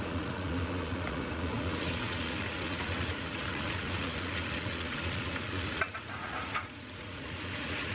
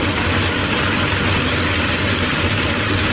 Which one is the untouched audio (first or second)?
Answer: second